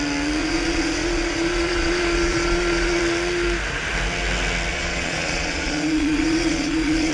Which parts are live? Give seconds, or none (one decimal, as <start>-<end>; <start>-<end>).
0.0-0.4; 3.0-4.7